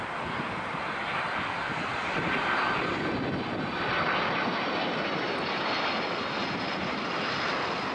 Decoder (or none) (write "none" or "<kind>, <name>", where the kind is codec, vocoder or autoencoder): vocoder, BigVGAN v2